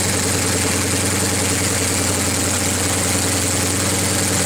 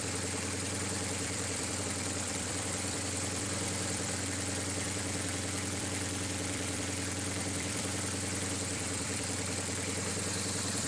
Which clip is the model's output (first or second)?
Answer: second